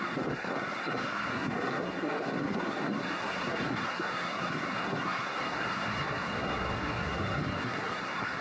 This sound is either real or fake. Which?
fake